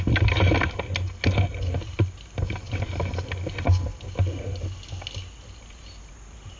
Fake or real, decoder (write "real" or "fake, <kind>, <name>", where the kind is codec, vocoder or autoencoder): real